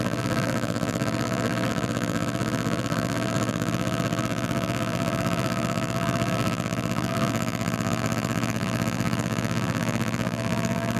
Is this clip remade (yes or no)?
yes